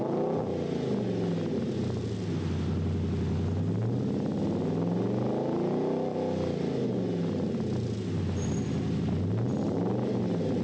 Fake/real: real